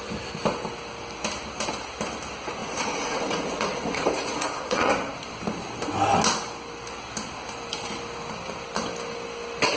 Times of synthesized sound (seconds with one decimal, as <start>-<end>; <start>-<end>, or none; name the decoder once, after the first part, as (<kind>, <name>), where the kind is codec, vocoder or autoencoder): 2.6-4.9 (vocoder, Vocos)